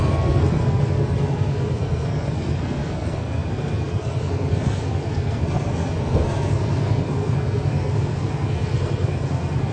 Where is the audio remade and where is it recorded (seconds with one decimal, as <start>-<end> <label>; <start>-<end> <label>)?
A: 0.0-9.7 remade